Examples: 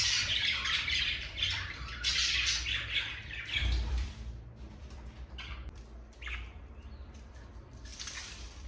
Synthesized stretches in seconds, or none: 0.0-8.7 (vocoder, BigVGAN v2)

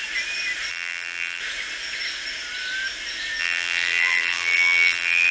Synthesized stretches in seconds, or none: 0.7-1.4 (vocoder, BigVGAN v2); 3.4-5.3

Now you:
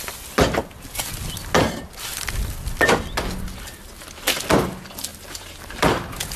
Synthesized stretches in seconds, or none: 5.1-6.4 (vocoder, BigVGAN v2)

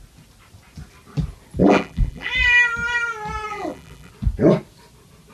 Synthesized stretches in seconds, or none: 1.6-2.3 (vocoder, BigVGAN v2); 3.5-4.1

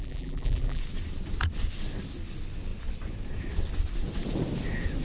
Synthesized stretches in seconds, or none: 0.0-0.8 (vocoder, BigVGAN v2)